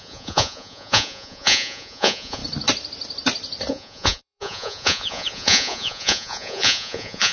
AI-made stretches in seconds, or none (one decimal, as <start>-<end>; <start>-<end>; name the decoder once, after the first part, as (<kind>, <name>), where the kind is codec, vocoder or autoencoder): 0.0-2.4 (vocoder, Vocos); 3.7-7.3

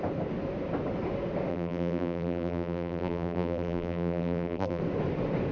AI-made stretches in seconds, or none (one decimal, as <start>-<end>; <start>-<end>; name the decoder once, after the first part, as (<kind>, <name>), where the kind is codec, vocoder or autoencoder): 1.5-4.8 (vocoder, BigVGAN v2)